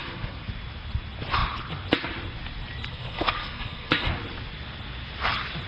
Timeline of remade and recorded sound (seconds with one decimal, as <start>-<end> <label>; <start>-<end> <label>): 0.0-0.5 remade; 0.5-2.9 recorded; 2.9-4.1 remade; 4.1-5.7 recorded